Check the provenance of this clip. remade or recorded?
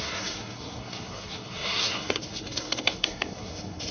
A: remade